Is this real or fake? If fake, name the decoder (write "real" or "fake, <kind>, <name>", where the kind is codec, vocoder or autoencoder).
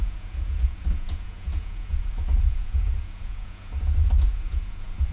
fake, vocoder, Vocos